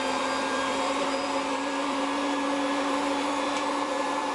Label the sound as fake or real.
fake